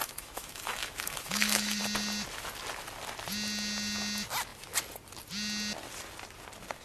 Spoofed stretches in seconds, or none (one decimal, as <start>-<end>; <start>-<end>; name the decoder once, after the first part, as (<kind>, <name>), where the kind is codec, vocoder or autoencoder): 0.0-1.8 (autoencoder, DAC-VAE)